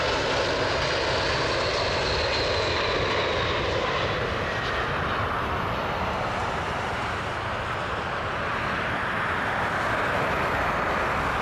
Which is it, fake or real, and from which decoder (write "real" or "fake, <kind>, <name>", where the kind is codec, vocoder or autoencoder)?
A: real